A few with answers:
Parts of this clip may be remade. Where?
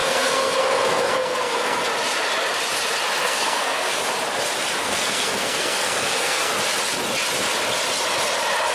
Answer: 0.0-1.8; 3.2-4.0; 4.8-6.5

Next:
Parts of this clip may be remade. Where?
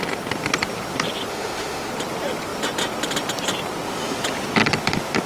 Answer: 1.3-1.9